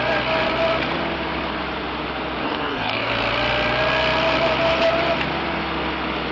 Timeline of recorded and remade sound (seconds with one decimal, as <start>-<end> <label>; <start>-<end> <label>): 0.0-2.4 recorded; 2.4-3.1 remade; 3.1-6.3 recorded